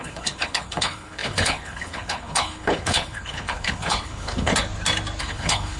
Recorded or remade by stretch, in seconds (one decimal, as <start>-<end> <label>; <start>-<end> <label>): 0.0-4.5 remade; 4.5-5.2 recorded; 5.2-5.8 remade